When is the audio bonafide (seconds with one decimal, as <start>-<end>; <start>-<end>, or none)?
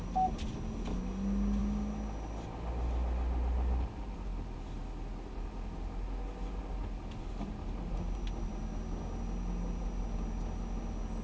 0.0-11.2